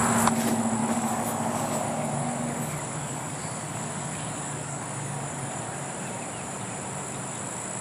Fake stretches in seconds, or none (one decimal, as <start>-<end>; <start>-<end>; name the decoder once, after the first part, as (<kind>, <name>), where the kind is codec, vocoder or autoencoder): 0.8-5.5 (codec, DAC)

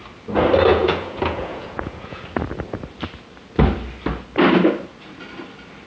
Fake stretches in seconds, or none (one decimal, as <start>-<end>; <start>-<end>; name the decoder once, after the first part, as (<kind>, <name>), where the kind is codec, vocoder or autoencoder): 0.7-2.2 (vocoder, Vocos)

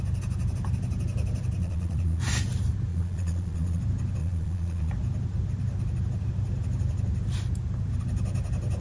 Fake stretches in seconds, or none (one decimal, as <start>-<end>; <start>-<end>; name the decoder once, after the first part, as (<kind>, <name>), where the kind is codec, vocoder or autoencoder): 1.6-2.2 (vocoder, Vocos); 2.9-3.8; 4.2-4.9

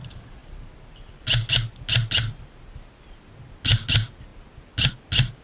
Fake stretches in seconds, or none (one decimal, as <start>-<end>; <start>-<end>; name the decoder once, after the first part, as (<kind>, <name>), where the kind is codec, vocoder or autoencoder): none